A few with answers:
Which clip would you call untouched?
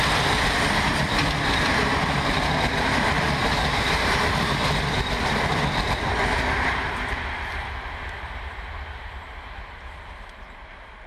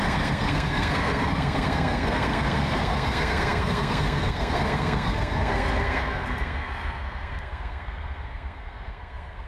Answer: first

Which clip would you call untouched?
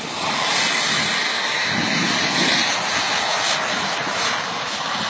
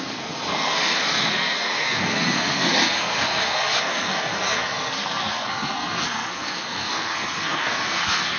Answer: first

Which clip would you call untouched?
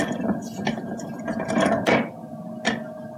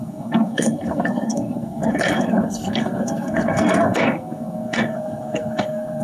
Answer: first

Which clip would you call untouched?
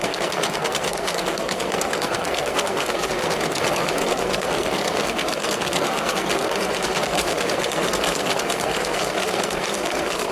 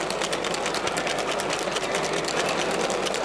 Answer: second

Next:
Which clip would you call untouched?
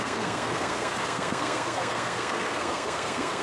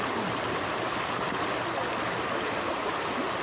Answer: second